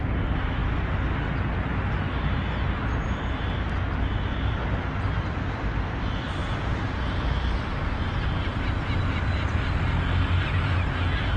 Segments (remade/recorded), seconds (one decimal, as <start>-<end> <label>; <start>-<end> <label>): 0.0-6.4 recorded; 6.4-7.0 remade; 7.0-11.4 recorded